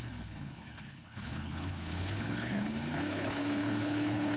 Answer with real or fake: fake